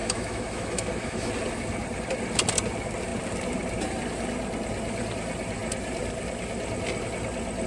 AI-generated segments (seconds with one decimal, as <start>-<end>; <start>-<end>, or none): 0.0-1.3

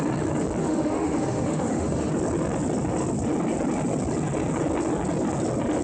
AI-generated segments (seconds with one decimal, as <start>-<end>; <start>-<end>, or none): 0.6-2.1

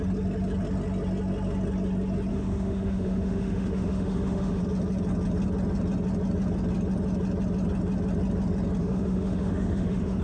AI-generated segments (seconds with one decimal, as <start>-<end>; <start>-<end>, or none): 2.3-4.6; 8.8-10.2

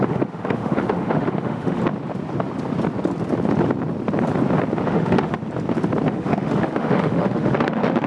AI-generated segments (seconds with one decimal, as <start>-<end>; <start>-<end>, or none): 0.0-1.8; 4.8-5.4; 6.1-8.1